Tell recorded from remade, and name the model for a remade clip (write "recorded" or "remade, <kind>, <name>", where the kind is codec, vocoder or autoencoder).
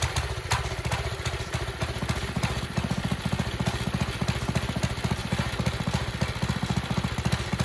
recorded